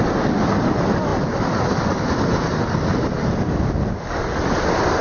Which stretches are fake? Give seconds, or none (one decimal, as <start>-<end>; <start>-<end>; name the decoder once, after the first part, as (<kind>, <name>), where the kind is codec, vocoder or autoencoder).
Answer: none